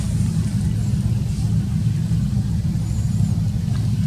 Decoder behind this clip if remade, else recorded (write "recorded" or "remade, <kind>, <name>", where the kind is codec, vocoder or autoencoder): recorded